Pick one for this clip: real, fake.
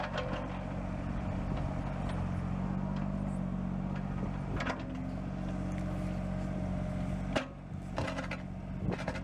real